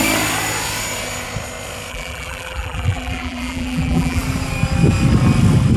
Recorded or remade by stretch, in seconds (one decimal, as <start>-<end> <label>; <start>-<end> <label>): 0.0-1.9 recorded; 1.9-4.2 remade; 4.2-5.8 recorded